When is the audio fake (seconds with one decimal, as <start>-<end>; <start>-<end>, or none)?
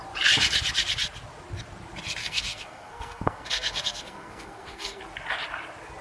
2.2-5.0